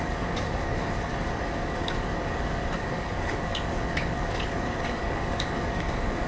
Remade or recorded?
remade